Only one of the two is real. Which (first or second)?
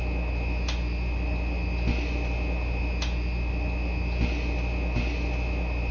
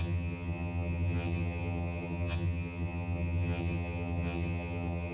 first